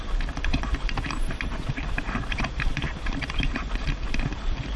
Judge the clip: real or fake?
fake